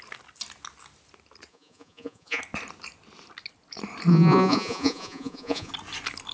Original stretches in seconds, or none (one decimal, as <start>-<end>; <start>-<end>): 0.0-1.5; 2.4-4.1; 5.7-6.3